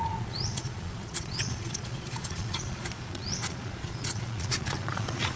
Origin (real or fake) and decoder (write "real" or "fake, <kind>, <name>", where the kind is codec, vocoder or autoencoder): fake, vocoder, Vocos